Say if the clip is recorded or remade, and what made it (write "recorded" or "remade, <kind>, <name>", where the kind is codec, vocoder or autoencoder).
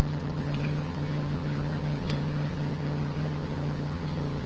remade, vocoder, HiFi-GAN